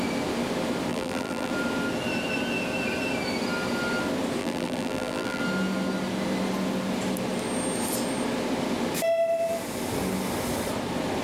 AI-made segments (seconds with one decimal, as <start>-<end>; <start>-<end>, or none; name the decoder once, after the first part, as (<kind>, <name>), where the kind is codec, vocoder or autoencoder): 0.9-1.5 (vocoder, BigVGAN v2); 4.4-5.4